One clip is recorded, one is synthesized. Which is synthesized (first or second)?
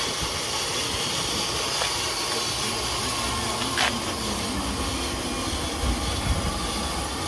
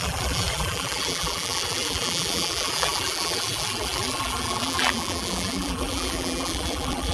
second